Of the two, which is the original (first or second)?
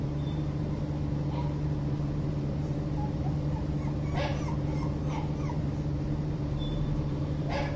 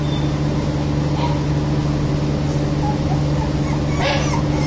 second